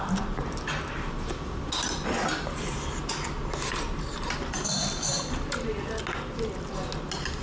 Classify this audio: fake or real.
real